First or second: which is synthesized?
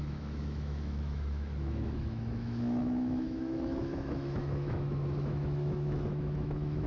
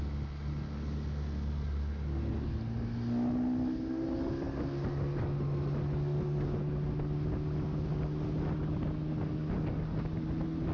first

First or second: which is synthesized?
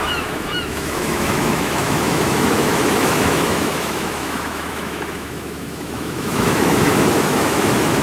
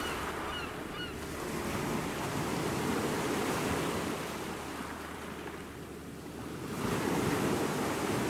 first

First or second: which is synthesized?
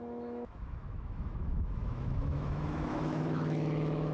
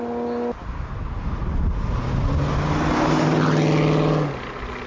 first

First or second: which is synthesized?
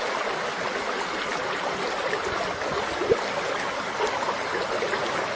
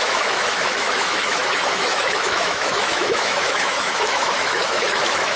second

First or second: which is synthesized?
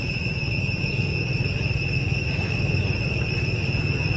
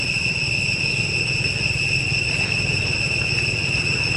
first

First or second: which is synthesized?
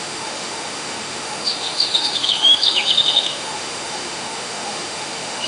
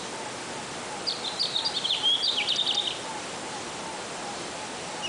first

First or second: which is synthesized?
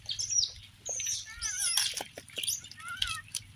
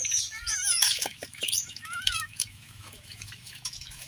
second